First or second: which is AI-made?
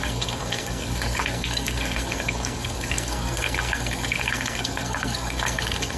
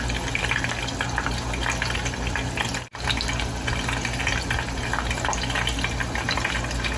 first